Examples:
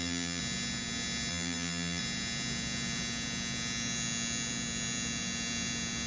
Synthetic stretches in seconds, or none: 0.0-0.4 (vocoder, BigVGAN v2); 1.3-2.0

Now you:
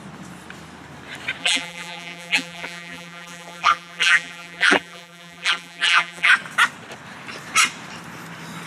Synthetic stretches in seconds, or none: 1.4-6.3 (vocoder, BigVGAN v2)

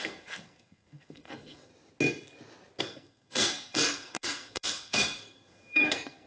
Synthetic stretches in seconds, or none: 0.0-1.7 (codec, SNAC); 2.8-6.3

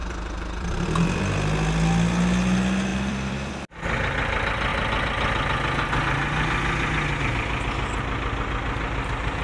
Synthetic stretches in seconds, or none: 0.0-1.2 (vocoder, BigVGAN v2); 2.9-3.5

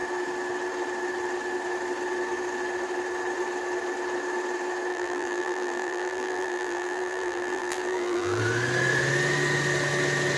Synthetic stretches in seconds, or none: 4.9-8.4 (vocoder, BigVGAN v2)

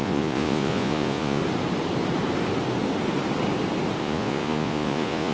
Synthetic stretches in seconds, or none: 0.0-1.4 (vocoder, Vocos); 4.0-5.3